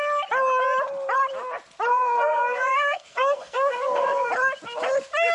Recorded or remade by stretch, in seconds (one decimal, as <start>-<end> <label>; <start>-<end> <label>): 0.0-1.9 recorded; 1.9-4.3 remade; 4.3-5.3 recorded